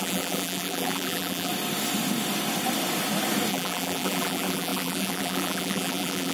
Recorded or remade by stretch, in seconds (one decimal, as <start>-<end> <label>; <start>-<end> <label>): 0.0-1.5 remade; 1.5-3.5 recorded; 3.5-6.3 remade